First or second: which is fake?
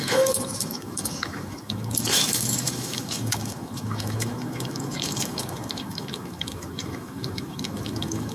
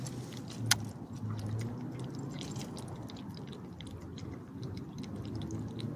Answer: first